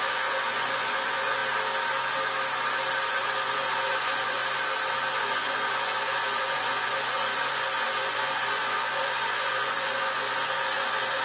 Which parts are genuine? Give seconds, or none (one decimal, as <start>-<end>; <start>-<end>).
1.4-3.1; 4.4-5.1